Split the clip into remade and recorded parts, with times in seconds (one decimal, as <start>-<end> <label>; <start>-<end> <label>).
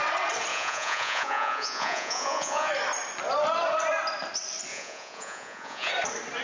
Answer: 0.0-0.5 recorded; 0.5-2.7 remade; 2.7-4.7 recorded; 4.7-5.9 remade; 5.9-6.4 recorded